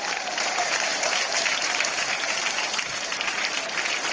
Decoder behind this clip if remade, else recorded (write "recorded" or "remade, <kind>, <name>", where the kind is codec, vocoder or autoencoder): remade, vocoder, BigVGAN v2